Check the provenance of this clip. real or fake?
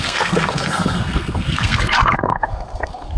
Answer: fake